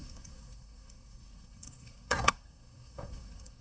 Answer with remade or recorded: remade